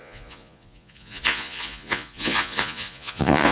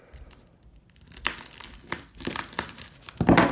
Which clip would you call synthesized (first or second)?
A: first